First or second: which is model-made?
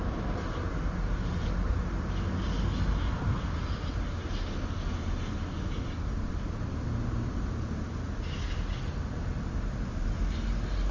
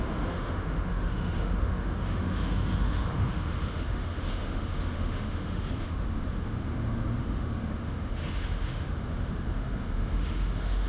second